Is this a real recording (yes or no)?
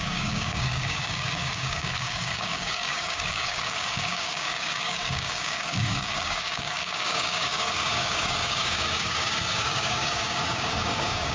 no